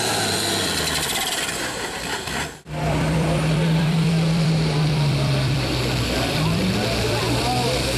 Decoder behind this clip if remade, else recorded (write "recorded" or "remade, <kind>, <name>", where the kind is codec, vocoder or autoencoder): remade, vocoder, BigVGAN v2